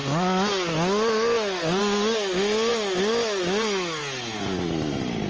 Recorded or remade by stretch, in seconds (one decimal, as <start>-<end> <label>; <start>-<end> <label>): 0.0-5.3 recorded